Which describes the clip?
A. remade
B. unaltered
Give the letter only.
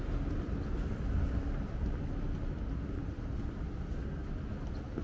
B